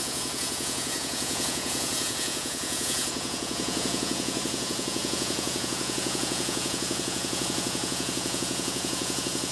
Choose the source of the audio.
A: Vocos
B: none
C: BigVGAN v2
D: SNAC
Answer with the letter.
A